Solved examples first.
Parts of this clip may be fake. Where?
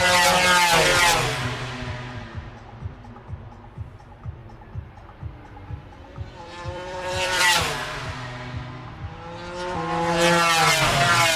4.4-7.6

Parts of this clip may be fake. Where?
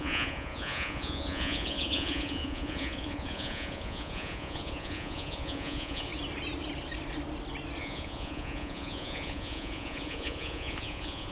0.0-6.1; 7.8-11.3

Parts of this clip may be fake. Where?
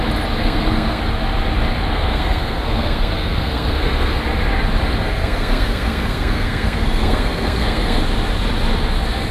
0.4-1.0; 1.9-4.2; 5.2-8.0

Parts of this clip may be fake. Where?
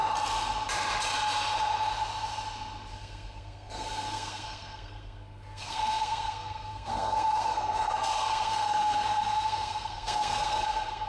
2.9-11.1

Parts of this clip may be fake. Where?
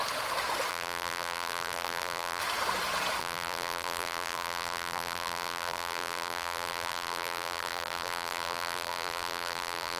0.7-2.4; 3.2-10.0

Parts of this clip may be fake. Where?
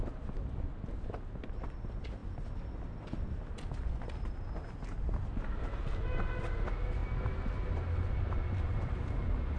none